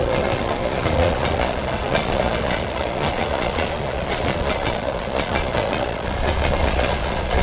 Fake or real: fake